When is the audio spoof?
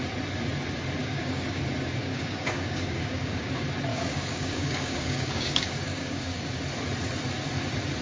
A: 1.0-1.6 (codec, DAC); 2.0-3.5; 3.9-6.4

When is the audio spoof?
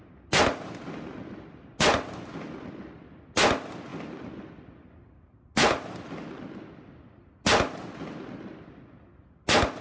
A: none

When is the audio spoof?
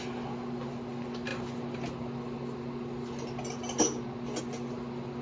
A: none